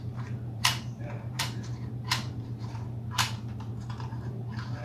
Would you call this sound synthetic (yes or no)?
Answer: yes